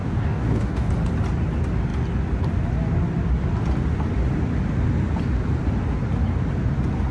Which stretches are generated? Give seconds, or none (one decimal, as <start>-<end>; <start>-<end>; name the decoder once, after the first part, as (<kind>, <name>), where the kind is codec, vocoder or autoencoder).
0.0-0.9 (codec, DAC)